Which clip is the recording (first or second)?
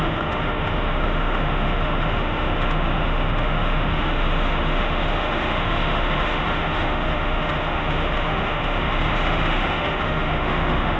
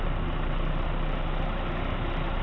second